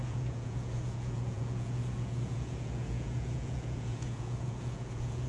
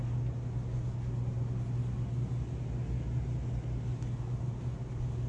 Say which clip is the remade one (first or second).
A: first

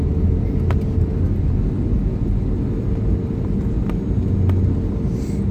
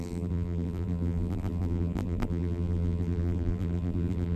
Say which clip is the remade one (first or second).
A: second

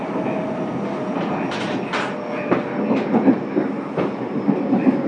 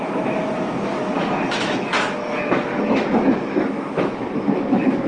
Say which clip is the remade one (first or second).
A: second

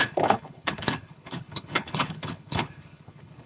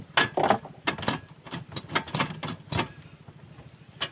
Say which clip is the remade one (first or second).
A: first